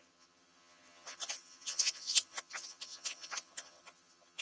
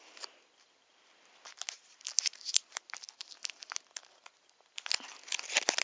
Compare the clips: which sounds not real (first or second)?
first